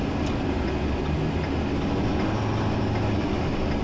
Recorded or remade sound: recorded